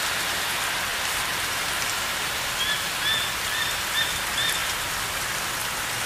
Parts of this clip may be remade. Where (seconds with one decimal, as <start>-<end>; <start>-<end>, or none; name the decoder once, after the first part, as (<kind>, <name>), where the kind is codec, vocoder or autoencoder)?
0.9-2.8 (vocoder, BigVGAN v2); 4.6-6.1